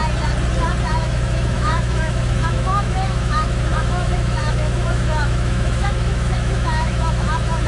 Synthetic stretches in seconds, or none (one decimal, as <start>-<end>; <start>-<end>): 0.9-7.7